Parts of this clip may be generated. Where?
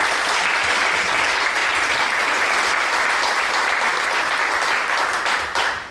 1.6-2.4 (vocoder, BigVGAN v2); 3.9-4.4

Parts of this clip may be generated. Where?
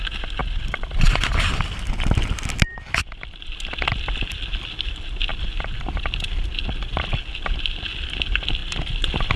0.4-1.9 (vocoder, BigVGAN v2); 5.3-7.2; 8.6-9.4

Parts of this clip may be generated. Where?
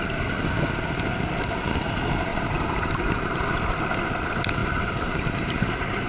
2.3-3.8 (vocoder, BigVGAN v2); 4.6-6.1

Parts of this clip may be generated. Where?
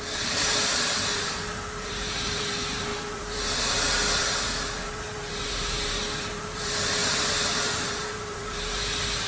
0.0-9.3 (vocoder, BigVGAN v2)